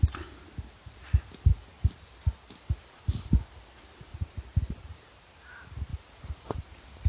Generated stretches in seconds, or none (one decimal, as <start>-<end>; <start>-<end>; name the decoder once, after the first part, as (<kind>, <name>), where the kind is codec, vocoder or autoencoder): 4.1-5.1 (vocoder, BigVGAN v2)